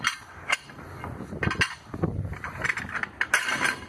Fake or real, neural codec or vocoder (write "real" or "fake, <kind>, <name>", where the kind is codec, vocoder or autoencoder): real